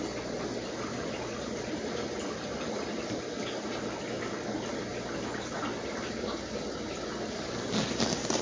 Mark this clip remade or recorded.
recorded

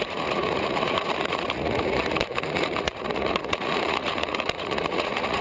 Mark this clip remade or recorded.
remade